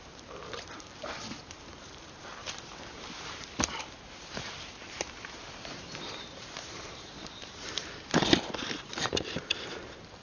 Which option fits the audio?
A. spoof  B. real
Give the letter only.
A